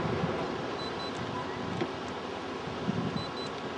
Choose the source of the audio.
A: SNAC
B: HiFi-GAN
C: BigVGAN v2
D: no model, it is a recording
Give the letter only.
D